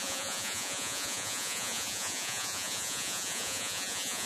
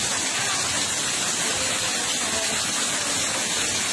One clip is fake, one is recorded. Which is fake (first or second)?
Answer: first